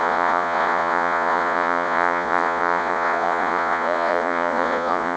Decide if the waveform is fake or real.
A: fake